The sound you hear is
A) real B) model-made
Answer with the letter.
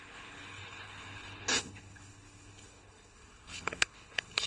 B